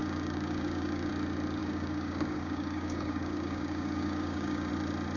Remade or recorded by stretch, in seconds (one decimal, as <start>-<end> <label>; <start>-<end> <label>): 0.0-1.1 remade; 1.1-1.6 recorded; 1.6-4.7 remade; 4.7-5.2 recorded